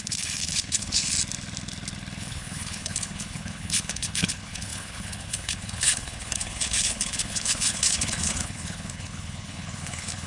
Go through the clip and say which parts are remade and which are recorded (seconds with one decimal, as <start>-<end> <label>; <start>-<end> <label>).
0.0-1.1 remade; 1.1-2.2 recorded; 2.2-10.3 remade